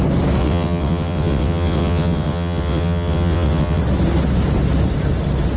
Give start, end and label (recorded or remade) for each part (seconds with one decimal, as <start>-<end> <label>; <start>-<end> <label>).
0.0-0.4 recorded; 0.4-3.8 remade; 3.8-5.6 recorded